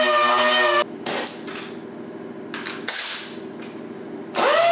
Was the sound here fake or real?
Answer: real